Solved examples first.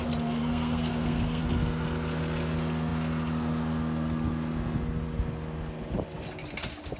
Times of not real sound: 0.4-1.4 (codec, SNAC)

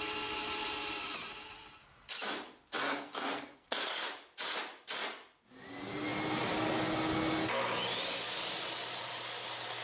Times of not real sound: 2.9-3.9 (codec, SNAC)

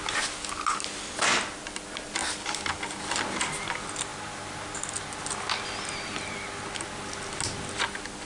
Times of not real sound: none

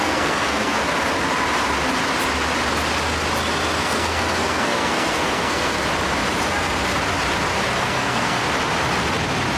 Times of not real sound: 0.0-0.8 (codec, SNAC); 3.8-5.8; 7.8-8.4